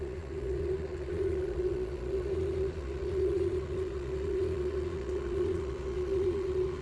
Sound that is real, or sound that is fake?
fake